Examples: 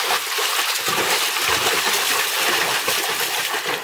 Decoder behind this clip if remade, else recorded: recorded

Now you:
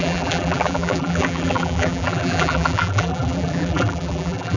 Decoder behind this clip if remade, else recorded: remade, vocoder, BigVGAN v2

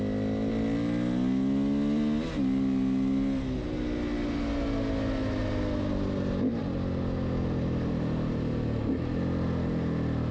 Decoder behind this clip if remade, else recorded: recorded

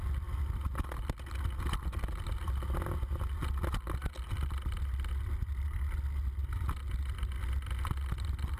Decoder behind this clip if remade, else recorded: recorded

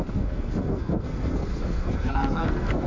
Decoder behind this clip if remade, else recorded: remade, codec, SNAC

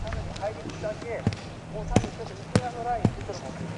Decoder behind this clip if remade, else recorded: recorded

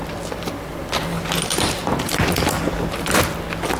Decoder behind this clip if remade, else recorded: recorded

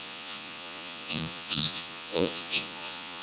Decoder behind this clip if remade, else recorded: remade, vocoder, Vocos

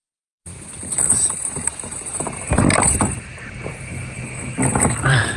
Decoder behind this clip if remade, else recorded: remade, vocoder, BigVGAN v2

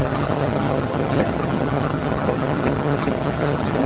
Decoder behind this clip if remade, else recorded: remade, vocoder, HiFi-GAN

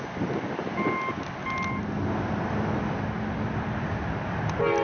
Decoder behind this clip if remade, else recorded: recorded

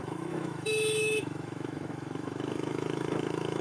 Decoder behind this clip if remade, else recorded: remade, autoencoder, DAC-VAE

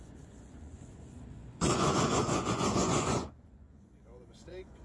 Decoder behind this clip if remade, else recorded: remade, vocoder, Vocos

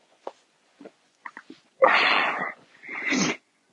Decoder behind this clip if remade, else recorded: remade, vocoder, Vocos